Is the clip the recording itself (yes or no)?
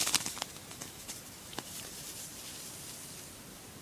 no